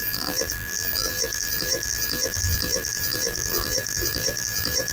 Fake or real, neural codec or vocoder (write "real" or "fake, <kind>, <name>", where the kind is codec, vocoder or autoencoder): fake, vocoder, BigVGAN v2